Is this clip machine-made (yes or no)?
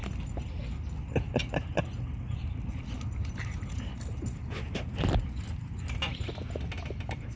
no